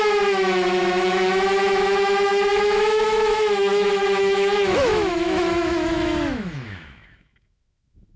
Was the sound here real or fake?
fake